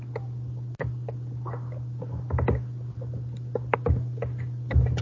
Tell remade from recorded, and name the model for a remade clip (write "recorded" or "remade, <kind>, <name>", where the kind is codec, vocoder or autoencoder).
recorded